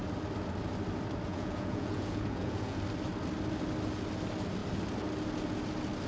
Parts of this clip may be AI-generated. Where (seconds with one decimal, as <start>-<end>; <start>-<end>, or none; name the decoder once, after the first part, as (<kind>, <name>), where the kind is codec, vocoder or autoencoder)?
1.3-2.8 (vocoder, Vocos)